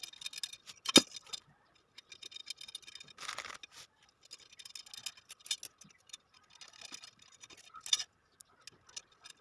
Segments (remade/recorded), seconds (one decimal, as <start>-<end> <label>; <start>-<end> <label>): 0.0-9.4 recorded